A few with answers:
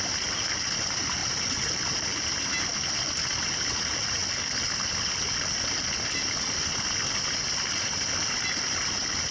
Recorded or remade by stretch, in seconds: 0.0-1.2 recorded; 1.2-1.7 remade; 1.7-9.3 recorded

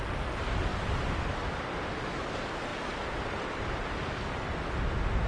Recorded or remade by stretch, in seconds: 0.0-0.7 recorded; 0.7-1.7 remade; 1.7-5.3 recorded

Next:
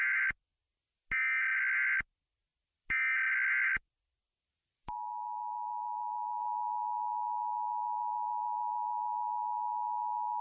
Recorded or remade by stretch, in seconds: 0.0-10.4 recorded